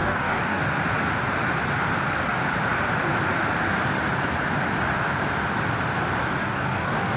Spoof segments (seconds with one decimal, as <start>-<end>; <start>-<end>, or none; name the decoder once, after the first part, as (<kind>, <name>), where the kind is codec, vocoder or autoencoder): 0.0-0.6 (codec, DAC); 6.4-7.2